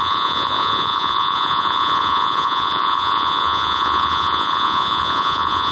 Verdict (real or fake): fake